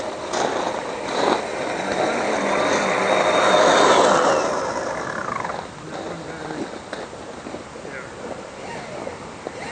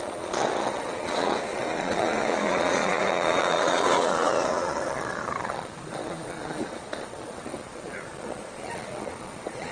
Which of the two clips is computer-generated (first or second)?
second